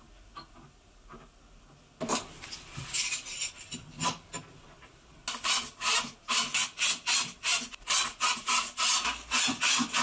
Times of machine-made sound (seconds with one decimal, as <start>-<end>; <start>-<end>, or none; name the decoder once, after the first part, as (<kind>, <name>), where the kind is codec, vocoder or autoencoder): none